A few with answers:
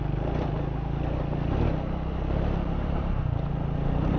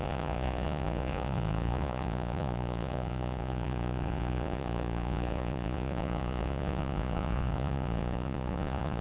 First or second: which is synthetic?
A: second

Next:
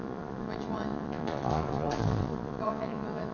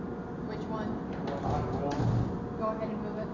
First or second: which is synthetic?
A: first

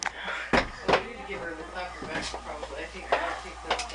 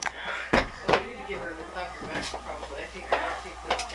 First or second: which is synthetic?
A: second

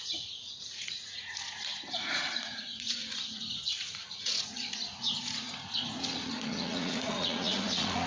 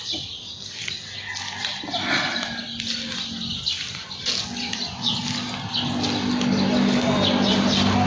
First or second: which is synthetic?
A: first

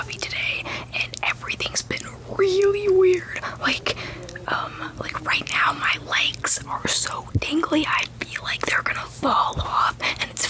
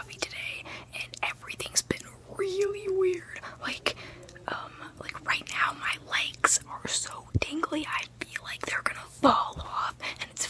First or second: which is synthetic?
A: second